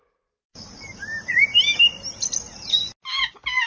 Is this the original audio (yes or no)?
yes